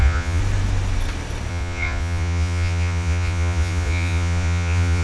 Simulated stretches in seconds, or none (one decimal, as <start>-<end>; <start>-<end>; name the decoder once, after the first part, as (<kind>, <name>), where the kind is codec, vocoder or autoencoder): 0.0-0.4 (vocoder, Vocos); 1.5-5.0